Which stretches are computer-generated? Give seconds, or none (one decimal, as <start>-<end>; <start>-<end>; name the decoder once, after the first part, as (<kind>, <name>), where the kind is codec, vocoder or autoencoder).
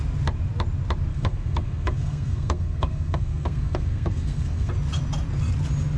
1.1-4.7 (codec, SNAC)